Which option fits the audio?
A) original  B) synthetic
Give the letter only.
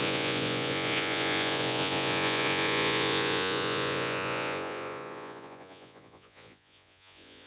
B